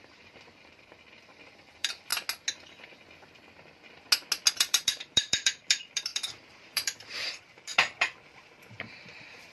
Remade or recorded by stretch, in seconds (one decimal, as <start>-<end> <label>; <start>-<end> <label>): 0.0-2.1 remade; 2.1-4.5 recorded; 4.5-9.5 remade